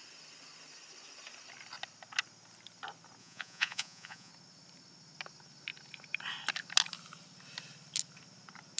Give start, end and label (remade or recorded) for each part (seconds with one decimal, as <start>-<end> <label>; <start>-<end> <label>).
0.0-3.2 recorded; 3.2-4.3 remade; 4.3-8.8 recorded